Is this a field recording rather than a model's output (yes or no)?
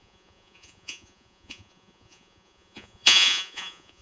no